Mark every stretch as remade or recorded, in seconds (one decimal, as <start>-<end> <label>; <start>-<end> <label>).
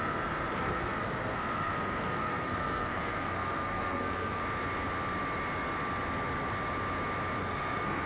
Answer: 0.0-4.4 remade; 4.4-7.4 recorded; 7.4-8.1 remade